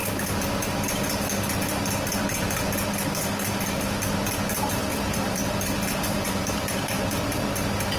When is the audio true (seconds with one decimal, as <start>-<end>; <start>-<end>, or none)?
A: 0.0-4.9; 6.7-8.0